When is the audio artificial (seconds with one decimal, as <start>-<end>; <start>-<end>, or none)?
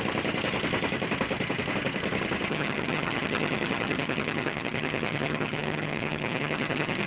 2.5-7.1